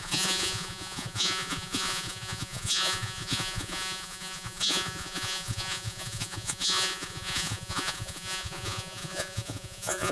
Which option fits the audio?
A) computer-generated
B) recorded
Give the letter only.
A